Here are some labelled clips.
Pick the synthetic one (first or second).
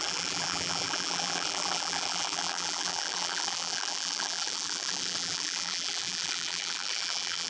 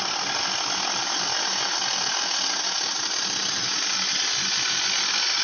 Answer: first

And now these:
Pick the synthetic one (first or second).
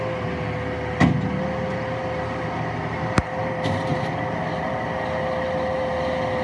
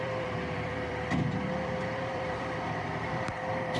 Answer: second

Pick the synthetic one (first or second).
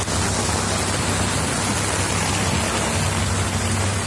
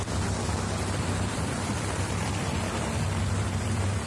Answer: second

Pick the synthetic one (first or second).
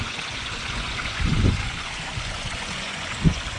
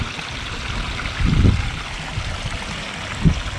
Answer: first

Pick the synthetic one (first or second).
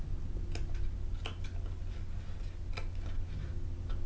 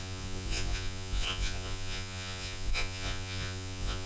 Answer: second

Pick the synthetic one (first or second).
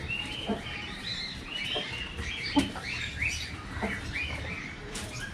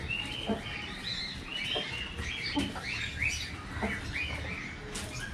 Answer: first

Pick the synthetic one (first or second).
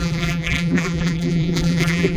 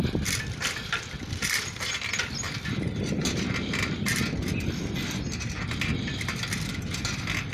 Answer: first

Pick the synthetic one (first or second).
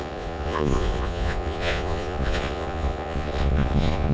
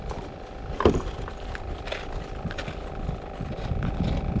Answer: first